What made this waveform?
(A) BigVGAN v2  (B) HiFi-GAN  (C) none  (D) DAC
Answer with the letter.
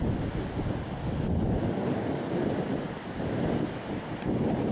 A